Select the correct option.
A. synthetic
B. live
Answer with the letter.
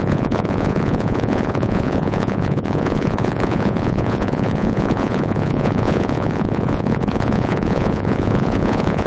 A